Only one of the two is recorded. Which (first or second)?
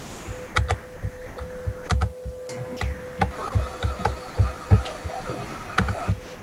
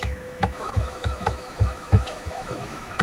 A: first